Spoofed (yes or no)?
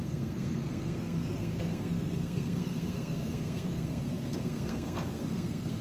yes